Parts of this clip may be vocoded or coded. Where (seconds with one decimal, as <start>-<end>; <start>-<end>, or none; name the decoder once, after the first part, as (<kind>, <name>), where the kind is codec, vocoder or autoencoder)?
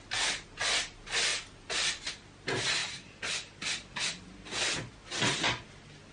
1.3-2.0 (vocoder, BigVGAN v2); 2.8-3.6